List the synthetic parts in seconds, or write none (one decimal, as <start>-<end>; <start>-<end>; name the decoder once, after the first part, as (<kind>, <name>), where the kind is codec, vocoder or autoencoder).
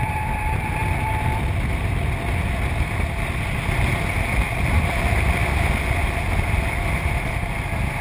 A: none